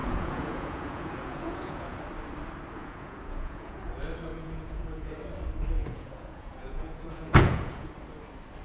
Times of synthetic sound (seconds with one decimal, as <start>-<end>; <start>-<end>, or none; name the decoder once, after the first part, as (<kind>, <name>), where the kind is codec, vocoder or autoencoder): 0.0-2.0 (vocoder, Vocos); 2.8-3.8; 4.3-5.1; 5.8-7.9